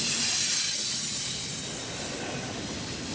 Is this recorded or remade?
recorded